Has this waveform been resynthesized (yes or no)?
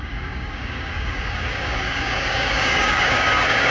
yes